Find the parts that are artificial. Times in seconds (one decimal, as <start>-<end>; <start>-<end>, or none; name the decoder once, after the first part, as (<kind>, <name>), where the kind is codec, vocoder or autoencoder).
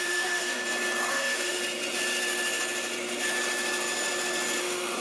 0.0-0.6 (autoencoder, DAC-VAE); 1.1-1.6; 4.6-5.0